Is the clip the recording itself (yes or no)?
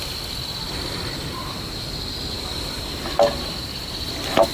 yes